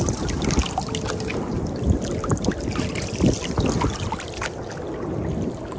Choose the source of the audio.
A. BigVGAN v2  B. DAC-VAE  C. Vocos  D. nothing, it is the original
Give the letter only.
D